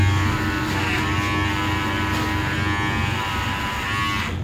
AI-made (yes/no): no